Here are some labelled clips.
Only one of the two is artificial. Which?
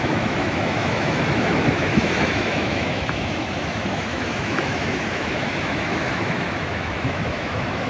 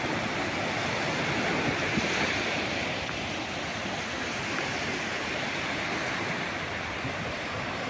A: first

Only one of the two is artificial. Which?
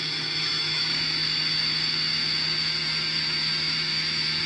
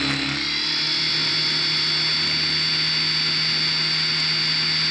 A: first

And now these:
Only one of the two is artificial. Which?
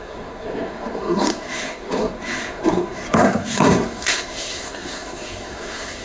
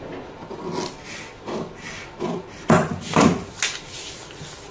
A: first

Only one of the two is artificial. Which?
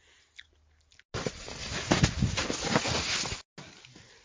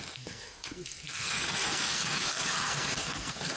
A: second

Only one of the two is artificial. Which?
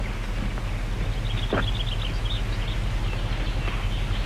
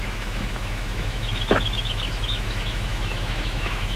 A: second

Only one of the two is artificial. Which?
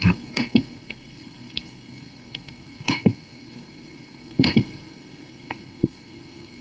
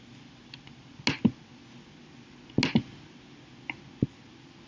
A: first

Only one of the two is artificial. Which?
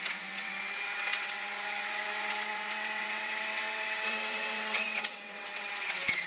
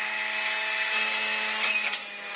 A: first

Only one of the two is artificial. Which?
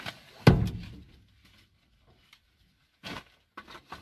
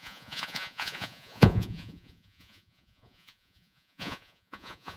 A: second